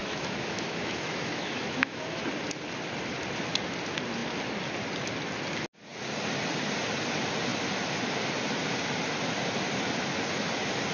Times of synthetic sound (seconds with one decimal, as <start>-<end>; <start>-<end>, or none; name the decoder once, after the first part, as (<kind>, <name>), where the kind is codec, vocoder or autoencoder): 0.0-2.2 (autoencoder, DAC-VAE)